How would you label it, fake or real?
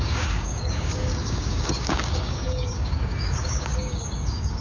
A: fake